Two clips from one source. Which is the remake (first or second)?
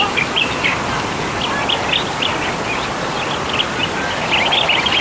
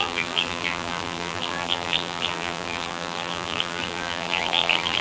second